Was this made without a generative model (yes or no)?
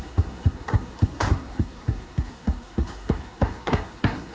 no